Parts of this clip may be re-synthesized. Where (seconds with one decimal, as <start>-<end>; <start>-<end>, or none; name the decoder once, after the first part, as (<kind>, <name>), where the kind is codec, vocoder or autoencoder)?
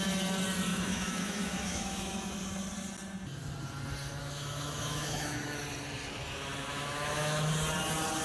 0.7-2.3 (autoencoder, DAC-VAE); 4.2-5.6; 6.7-7.5